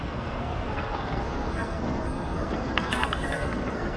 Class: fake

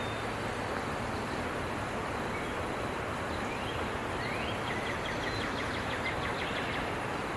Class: real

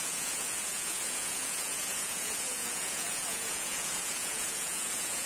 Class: fake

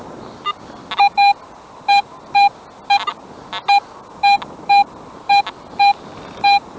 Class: real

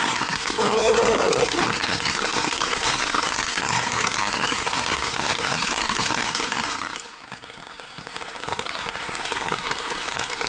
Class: fake